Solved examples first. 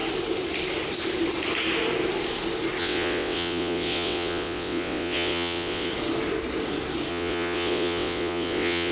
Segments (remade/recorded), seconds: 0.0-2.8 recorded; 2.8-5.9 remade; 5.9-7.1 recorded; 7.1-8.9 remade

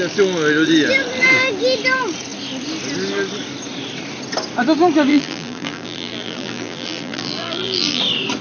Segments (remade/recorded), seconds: 0.0-5.1 recorded; 5.1-8.0 remade; 8.0-8.4 recorded

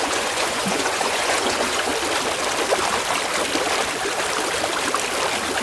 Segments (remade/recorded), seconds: 0.0-1.9 remade; 1.9-5.6 recorded

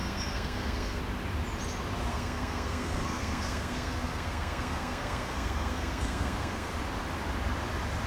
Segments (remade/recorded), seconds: 0.0-1.0 remade; 1.0-2.1 recorded; 2.1-6.7 remade; 6.7-8.1 recorded

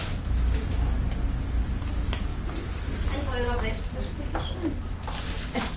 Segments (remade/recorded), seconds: 0.0-5.8 recorded

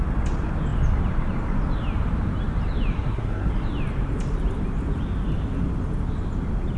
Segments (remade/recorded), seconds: 0.0-2.9 recorded; 2.9-3.5 remade; 3.5-6.8 recorded

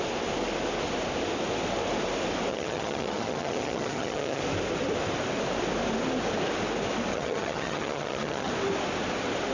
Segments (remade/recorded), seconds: 0.0-2.5 recorded; 2.5-4.4 remade; 4.4-7.1 recorded; 7.1-8.5 remade; 8.5-9.5 recorded

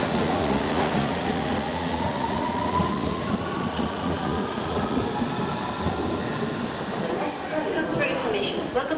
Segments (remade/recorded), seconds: 0.0-5.0 remade; 5.0-8.6 recorded; 8.6-9.0 remade